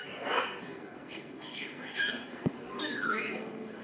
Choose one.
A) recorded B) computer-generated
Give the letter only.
B